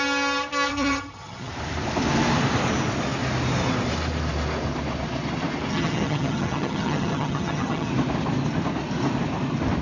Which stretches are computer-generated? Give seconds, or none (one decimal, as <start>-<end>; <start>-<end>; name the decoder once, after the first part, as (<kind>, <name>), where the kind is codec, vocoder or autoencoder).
0.7-1.5 (vocoder, HiFi-GAN); 5.7-7.9